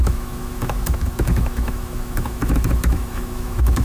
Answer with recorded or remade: remade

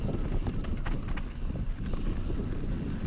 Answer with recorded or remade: recorded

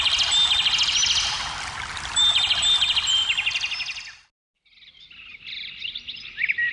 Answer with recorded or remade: recorded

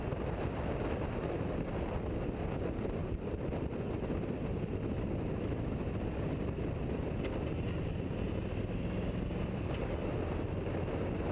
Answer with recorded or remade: recorded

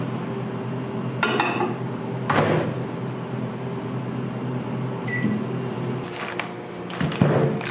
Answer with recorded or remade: recorded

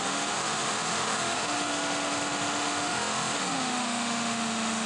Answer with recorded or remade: remade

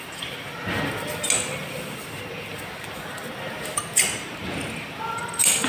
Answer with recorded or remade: recorded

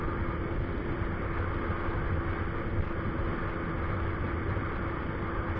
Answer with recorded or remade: recorded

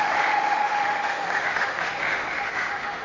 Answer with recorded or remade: remade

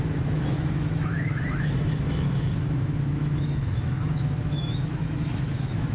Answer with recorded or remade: remade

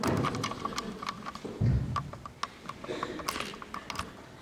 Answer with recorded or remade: recorded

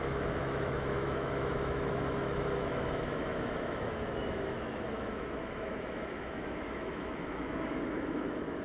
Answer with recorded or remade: remade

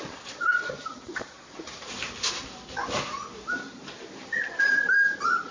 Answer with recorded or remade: recorded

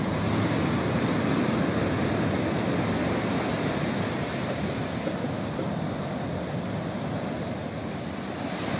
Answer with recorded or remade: recorded